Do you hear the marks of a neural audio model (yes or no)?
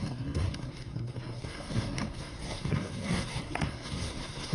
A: yes